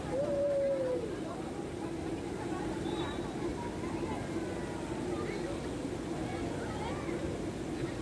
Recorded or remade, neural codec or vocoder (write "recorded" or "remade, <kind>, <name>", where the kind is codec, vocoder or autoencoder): recorded